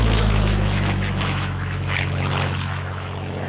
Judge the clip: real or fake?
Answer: fake